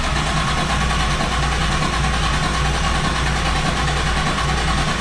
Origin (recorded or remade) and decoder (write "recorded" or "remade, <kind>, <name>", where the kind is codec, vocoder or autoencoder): recorded